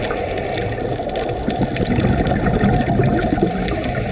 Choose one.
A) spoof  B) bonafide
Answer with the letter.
B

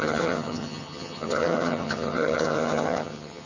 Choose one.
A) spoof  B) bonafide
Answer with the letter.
A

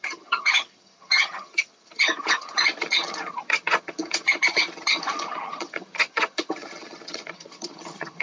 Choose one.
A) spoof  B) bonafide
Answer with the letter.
A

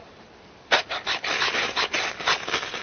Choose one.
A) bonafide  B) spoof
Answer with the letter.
A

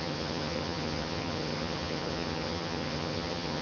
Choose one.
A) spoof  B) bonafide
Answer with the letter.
A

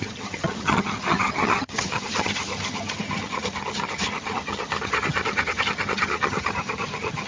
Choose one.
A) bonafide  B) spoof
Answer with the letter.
B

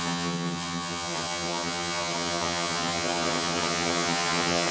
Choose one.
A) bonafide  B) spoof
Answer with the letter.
B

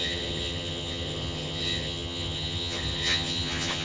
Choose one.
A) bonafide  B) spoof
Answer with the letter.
B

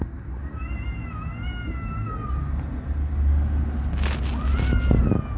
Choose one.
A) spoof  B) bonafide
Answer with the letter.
B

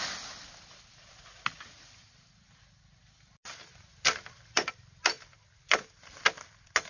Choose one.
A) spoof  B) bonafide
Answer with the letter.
B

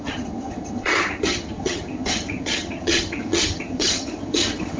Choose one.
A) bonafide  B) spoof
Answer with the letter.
B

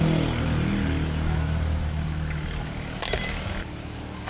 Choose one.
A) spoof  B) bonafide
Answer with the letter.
B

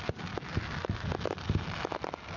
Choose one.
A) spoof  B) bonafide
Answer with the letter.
B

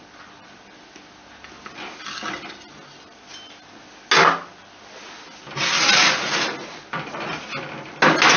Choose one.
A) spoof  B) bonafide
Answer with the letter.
B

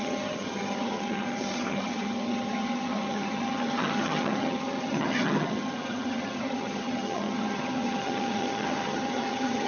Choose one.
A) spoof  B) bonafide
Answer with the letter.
A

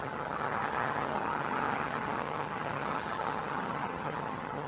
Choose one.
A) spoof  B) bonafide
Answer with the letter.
A